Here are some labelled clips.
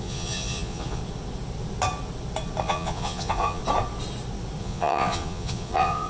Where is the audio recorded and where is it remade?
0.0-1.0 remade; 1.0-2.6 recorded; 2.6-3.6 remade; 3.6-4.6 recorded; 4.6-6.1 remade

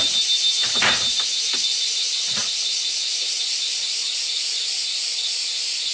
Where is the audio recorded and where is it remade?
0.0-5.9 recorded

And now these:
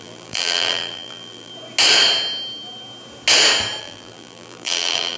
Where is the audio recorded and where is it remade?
0.0-1.5 remade; 1.5-3.8 recorded; 3.8-5.2 remade